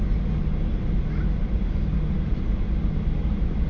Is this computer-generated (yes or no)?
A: no